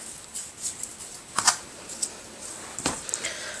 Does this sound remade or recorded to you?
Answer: recorded